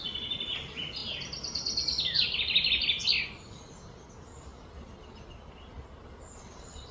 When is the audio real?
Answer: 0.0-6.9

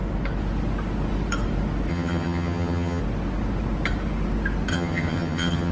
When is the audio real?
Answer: 0.0-1.9; 3.0-4.7

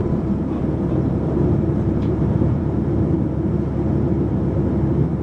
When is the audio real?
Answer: 2.8-5.2

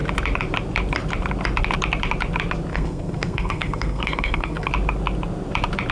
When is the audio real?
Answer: 0.0-2.7; 4.7-5.9

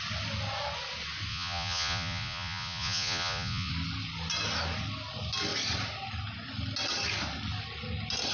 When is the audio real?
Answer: 0.0-1.3; 3.7-8.3

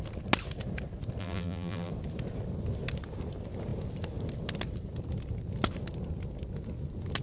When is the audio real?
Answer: 0.0-1.2; 1.9-7.2

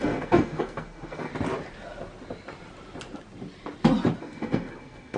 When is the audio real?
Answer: 1.3-4.2

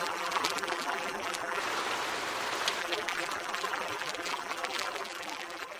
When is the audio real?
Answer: 1.6-2.8